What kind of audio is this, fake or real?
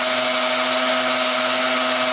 real